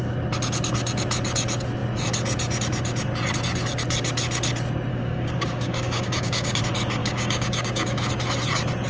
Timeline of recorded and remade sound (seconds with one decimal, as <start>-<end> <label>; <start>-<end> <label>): 0.0-4.9 recorded; 4.9-6.6 remade; 6.6-7.0 recorded; 7.0-8.1 remade; 8.1-8.9 recorded